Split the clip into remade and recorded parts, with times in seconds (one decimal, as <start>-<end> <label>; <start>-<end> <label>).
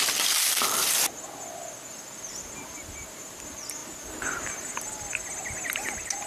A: 0.0-6.3 recorded